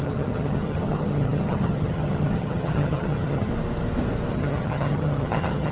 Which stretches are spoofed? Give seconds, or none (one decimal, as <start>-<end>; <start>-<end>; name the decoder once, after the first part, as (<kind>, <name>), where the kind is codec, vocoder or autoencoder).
0.0-3.5 (vocoder, HiFi-GAN); 4.3-5.7